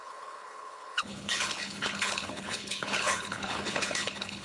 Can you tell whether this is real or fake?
fake